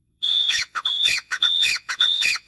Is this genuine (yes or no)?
no